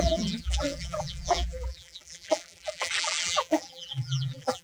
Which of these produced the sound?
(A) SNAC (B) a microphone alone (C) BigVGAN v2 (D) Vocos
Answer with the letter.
C